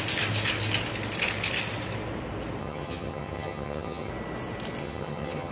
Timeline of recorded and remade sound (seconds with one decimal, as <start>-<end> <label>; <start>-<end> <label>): 0.0-2.6 recorded; 2.6-4.1 remade; 4.1-4.8 recorded; 4.8-5.5 remade